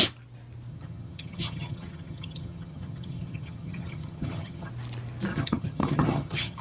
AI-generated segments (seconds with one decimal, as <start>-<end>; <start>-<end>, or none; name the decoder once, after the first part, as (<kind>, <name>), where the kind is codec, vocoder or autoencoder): 0.7-4.7 (vocoder, HiFi-GAN); 5.3-6.6